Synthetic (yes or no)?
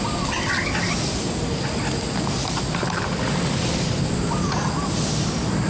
no